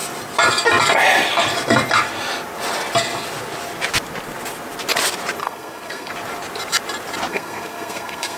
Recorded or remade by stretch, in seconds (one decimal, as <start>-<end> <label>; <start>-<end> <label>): 0.0-5.4 recorded; 5.4-6.1 remade; 6.1-7.3 recorded; 7.3-8.4 remade